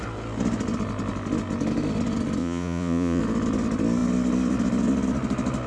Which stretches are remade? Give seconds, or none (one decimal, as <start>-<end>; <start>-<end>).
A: 2.4-3.2